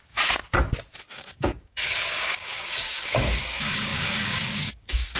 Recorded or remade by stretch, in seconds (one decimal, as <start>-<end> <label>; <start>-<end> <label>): 0.0-0.4 remade; 0.4-1.0 recorded; 1.0-5.2 remade